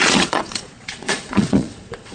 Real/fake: fake